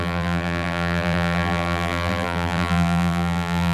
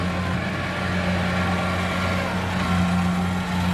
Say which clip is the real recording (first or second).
second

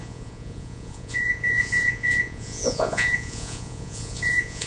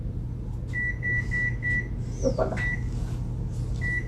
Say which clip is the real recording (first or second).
second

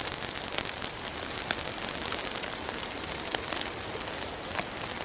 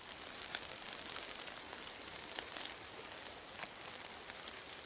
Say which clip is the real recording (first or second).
first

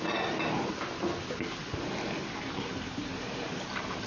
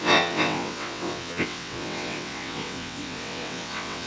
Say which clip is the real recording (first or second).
first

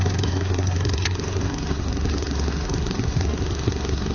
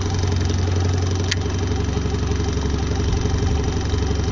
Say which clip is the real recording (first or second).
second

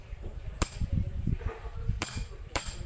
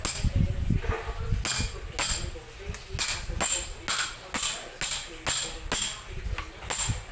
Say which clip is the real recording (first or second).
second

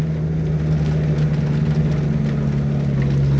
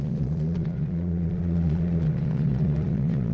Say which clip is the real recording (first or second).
first